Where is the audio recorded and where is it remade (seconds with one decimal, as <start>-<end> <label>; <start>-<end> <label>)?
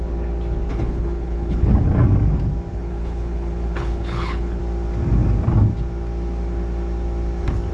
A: 0.0-0.7 recorded; 0.7-1.7 remade; 1.7-2.7 recorded; 2.7-4.6 remade; 4.6-7.7 recorded